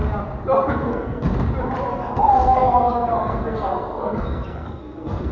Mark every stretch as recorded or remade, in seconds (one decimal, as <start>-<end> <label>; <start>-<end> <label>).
0.0-0.7 recorded; 0.7-1.3 remade; 1.3-1.9 recorded; 1.9-5.3 remade